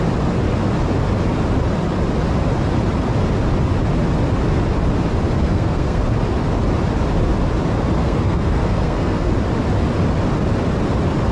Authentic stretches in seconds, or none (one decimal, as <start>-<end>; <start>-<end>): 0.0-5.4; 6.1-8.0; 9.3-11.3